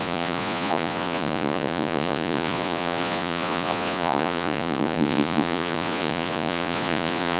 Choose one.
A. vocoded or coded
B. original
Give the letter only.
A